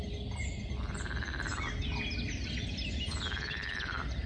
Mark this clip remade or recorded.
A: recorded